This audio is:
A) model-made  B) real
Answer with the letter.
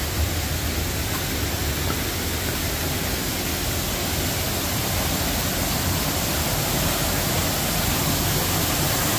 B